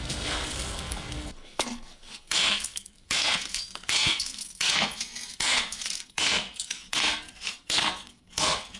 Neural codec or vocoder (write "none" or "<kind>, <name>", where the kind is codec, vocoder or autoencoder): codec, SNAC